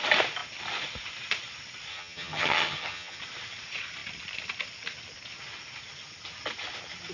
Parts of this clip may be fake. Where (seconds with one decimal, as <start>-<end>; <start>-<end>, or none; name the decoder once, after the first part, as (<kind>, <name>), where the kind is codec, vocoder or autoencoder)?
1.9-3.2 (vocoder, HiFi-GAN)